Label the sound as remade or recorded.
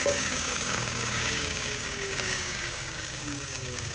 remade